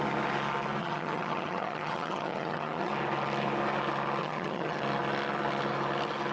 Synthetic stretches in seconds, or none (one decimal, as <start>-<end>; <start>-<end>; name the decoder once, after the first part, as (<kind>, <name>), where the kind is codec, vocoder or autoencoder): 0.8-2.9 (vocoder, HiFi-GAN); 4.2-4.8